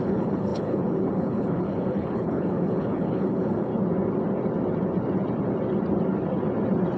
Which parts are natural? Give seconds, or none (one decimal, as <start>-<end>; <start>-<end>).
3.7-7.0